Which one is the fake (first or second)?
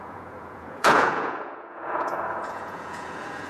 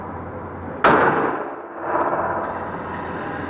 first